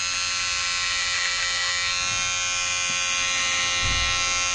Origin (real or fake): real